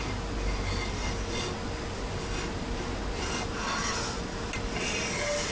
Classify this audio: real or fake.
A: real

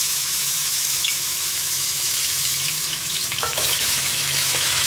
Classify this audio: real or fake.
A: fake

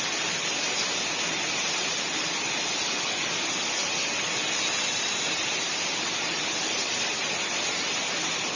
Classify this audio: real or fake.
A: real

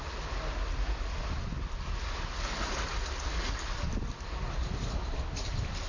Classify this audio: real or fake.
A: real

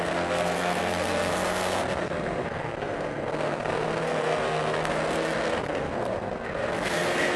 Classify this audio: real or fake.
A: fake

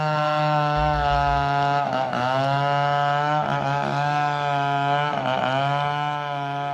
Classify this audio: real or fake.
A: fake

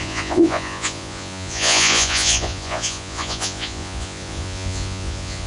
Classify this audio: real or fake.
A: fake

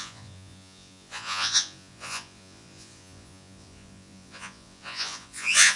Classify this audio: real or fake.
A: fake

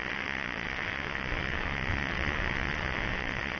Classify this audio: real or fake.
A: fake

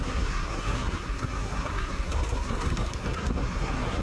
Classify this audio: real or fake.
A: fake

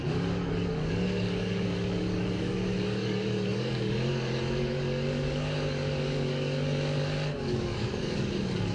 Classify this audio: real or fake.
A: fake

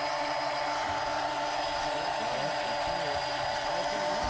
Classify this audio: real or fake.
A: real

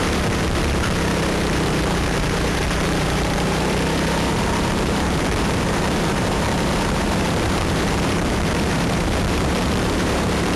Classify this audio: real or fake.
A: fake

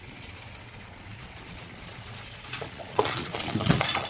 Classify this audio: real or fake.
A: fake